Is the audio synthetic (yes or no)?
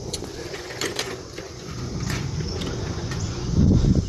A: yes